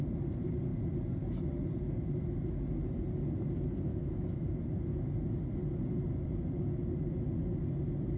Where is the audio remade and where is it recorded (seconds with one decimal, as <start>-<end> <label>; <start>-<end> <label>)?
0.0-3.9 recorded; 3.9-4.5 remade; 4.5-8.2 recorded